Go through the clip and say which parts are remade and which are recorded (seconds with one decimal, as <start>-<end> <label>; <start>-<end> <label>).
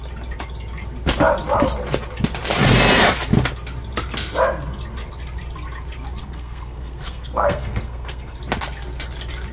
0.0-6.2 recorded; 6.2-8.4 remade; 8.4-9.5 recorded